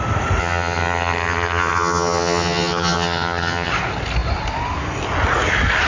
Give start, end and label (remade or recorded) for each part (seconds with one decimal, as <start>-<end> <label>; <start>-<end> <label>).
0.0-0.4 recorded; 0.4-3.7 remade; 3.7-5.9 recorded